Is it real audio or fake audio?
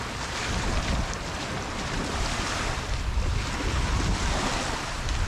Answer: real